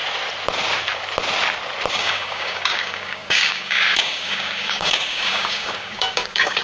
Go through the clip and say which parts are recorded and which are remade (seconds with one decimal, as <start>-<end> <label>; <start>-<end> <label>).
0.0-1.9 recorded; 1.9-6.6 remade